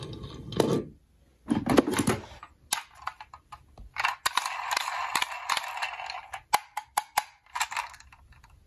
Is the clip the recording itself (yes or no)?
yes